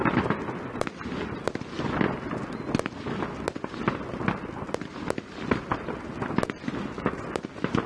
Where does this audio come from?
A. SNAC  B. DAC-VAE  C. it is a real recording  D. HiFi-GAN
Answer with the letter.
C